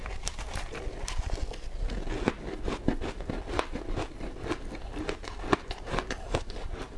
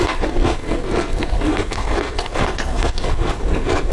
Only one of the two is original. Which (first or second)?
first